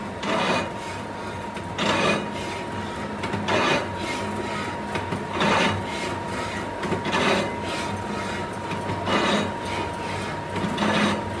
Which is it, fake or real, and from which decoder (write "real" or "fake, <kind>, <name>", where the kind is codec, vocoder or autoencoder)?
real